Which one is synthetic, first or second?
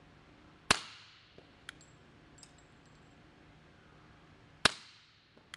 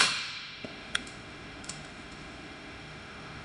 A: second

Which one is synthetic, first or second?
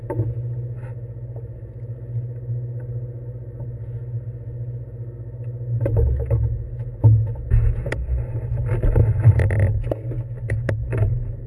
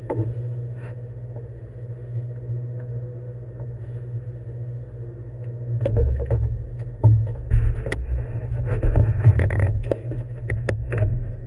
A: second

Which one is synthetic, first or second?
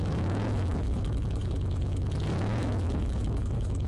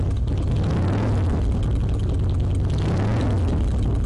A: first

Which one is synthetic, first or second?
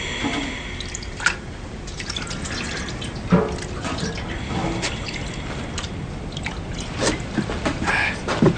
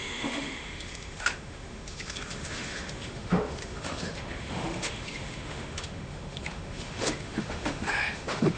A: second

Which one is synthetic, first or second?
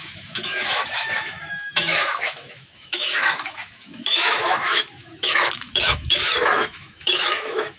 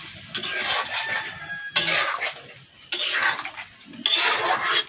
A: first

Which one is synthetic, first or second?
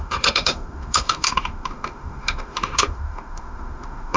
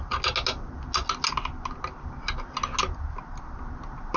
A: first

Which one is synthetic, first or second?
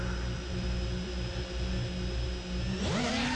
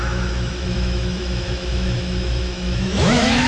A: second